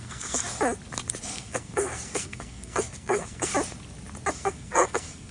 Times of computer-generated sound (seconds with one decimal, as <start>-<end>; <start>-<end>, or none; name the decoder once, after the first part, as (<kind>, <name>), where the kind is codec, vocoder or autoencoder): 0.0-0.4 (codec, SNAC); 1.2-3.5; 4.3-5.3